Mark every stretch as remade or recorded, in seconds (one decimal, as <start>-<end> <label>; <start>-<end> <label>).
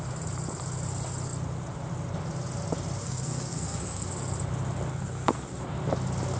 0.0-3.0 recorded; 3.0-4.1 remade; 4.1-4.9 recorded; 4.9-5.6 remade; 5.6-6.4 recorded